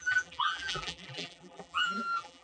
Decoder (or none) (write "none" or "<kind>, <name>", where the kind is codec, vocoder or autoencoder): vocoder, BigVGAN v2